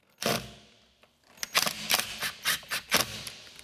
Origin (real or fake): real